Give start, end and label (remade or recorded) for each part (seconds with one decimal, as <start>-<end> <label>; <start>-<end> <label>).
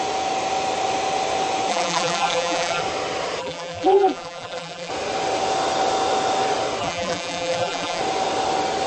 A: 0.0-1.7 recorded; 1.7-2.8 remade; 2.8-3.4 recorded; 3.4-4.9 remade; 4.9-6.8 recorded; 6.8-8.0 remade; 8.0-8.9 recorded